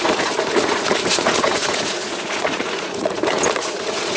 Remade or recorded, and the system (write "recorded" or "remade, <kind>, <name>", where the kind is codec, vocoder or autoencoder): remade, vocoder, Vocos